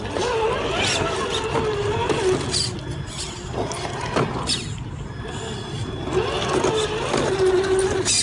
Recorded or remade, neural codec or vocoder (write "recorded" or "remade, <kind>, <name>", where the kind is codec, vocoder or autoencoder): recorded